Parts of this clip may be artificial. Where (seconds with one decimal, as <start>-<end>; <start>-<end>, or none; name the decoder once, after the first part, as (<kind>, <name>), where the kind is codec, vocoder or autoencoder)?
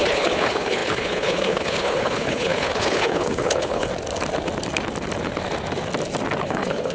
0.0-3.9 (codec, HILCodec); 6.4-6.9